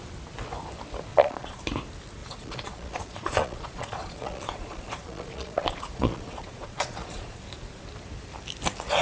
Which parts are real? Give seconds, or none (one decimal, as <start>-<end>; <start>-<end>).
0.0-1.1; 1.6-2.2; 7.4-9.0